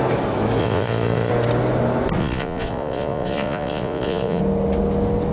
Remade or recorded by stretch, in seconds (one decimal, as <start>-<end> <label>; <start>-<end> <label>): 0.0-0.6 recorded; 0.6-1.3 remade; 1.3-2.2 recorded; 2.2-4.4 remade; 4.4-5.3 recorded